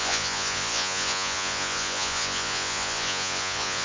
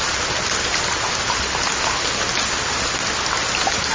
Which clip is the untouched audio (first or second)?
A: second